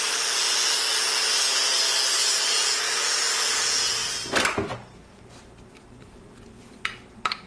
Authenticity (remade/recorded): recorded